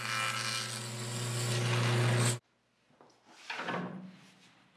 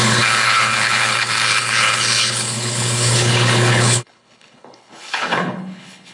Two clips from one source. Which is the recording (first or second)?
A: first